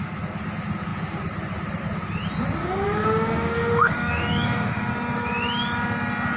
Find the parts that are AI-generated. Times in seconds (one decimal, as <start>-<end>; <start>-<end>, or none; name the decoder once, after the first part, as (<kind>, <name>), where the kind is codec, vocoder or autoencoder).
2.6-4.9 (codec, DAC)